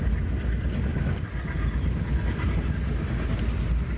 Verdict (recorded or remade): recorded